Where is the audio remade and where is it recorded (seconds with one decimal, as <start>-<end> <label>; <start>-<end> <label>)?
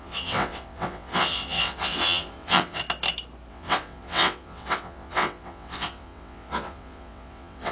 0.0-2.8 remade; 2.8-3.5 recorded; 3.5-7.7 remade